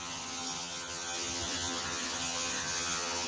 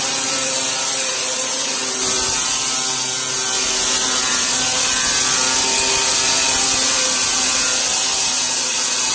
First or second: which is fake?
first